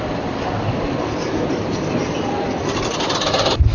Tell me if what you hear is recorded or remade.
recorded